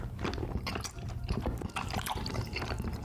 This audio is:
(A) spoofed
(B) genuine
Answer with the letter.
A